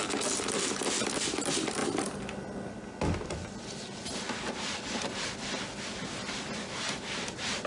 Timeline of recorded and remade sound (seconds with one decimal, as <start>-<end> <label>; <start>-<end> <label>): 0.0-7.7 recorded